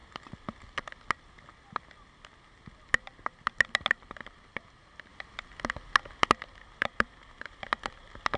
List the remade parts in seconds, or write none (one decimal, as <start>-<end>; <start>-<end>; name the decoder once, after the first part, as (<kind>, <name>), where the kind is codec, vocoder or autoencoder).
6.8-7.6 (vocoder, BigVGAN v2)